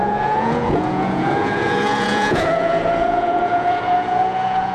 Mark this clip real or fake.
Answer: fake